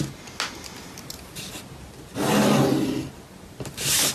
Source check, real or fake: real